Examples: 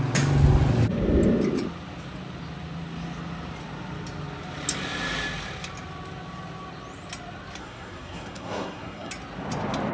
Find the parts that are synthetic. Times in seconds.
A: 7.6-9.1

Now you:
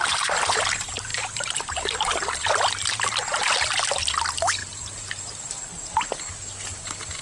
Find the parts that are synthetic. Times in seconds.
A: 1.1-1.6; 4.6-5.5

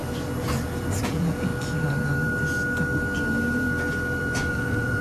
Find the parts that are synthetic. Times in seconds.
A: 1.0-1.5; 4.5-5.0

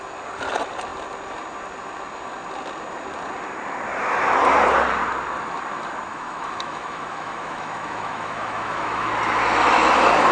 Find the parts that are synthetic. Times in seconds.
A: 6.1-9.1

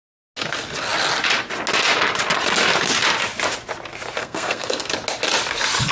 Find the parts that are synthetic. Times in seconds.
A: 4.2-4.9